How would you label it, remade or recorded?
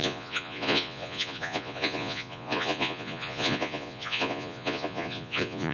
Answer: remade